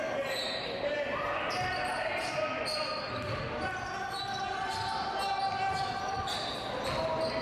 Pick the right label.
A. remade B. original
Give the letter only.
B